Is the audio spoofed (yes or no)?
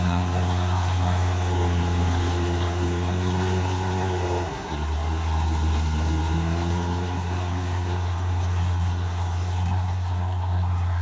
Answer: yes